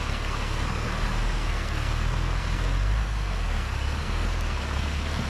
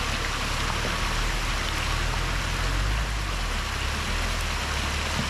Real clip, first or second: second